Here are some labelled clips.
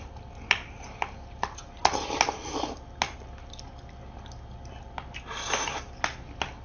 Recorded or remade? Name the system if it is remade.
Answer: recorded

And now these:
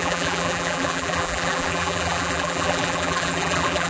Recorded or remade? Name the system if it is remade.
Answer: remade, vocoder, BigVGAN v2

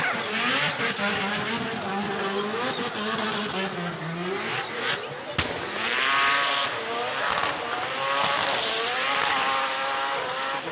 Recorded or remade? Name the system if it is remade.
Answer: recorded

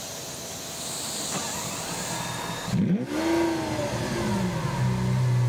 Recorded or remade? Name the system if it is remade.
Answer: recorded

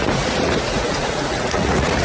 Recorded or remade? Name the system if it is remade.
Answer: remade, vocoder, Vocos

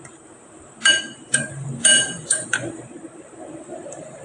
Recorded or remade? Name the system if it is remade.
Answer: remade, vocoder, BigVGAN v2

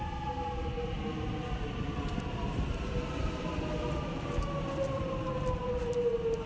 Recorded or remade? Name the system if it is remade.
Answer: recorded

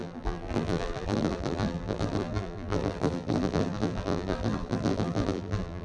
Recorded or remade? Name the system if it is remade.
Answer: remade, vocoder, BigVGAN v2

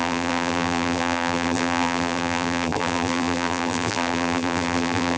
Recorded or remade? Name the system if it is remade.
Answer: remade, vocoder, BigVGAN v2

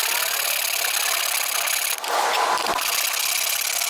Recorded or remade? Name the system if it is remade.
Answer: recorded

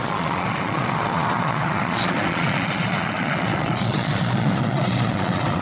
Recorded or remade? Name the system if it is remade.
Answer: remade, vocoder, Vocos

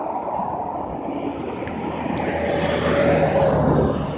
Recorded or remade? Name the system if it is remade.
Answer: recorded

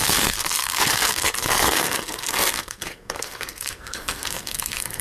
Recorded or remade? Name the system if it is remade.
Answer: remade, codec, SNAC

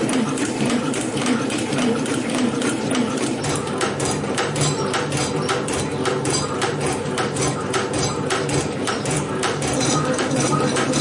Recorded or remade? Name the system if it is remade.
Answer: remade, vocoder, BigVGAN v2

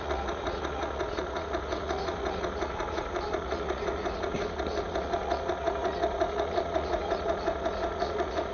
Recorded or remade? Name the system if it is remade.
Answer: remade, vocoder, Vocos